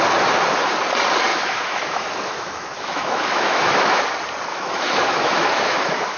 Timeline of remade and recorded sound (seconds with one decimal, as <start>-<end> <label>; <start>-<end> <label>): 0.0-1.3 recorded; 1.3-4.0 remade; 4.0-4.5 recorded; 4.5-6.2 remade